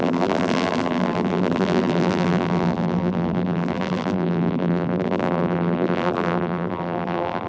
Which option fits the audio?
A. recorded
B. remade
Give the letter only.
B